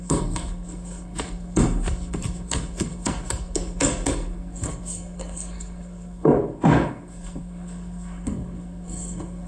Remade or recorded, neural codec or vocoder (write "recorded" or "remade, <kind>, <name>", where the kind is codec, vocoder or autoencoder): remade, codec, SNAC